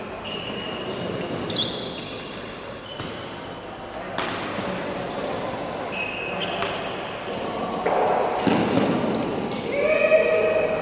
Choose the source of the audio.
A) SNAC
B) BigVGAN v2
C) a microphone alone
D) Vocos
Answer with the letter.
C